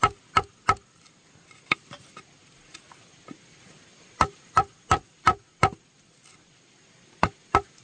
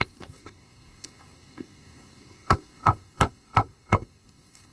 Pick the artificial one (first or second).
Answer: second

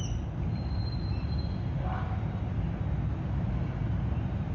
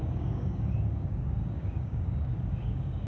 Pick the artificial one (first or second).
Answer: second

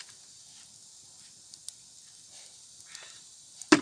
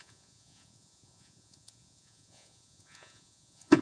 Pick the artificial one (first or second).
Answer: second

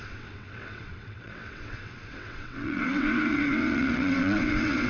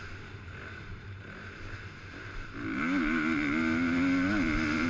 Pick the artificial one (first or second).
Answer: first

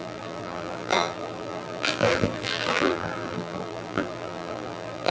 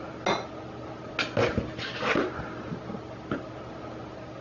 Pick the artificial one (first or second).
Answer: first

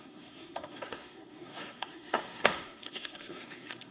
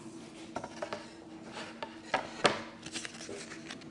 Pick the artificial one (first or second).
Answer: first